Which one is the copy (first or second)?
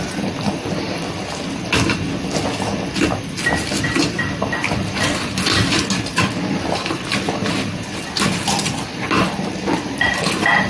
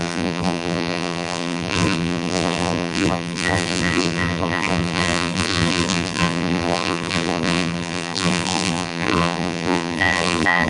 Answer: second